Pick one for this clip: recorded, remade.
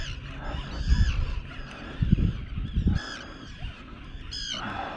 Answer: recorded